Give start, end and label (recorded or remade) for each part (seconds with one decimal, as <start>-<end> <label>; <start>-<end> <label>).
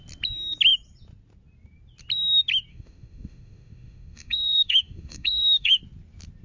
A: 0.0-2.7 recorded; 2.7-5.8 remade; 5.8-6.4 recorded